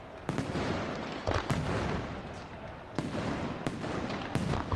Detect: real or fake real